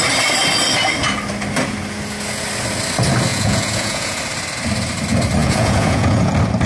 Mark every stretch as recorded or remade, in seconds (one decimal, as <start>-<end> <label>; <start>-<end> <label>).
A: 0.0-3.3 recorded; 3.3-4.2 remade; 4.2-5.4 recorded; 5.4-6.3 remade; 6.3-6.7 recorded